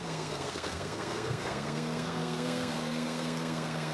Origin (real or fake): fake